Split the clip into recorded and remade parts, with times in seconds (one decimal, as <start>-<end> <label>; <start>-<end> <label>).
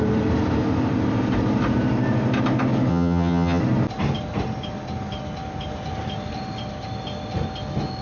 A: 0.0-2.9 recorded; 2.9-3.6 remade; 3.6-8.0 recorded